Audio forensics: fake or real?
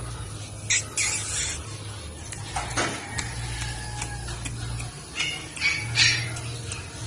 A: real